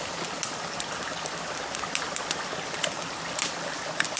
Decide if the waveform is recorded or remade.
remade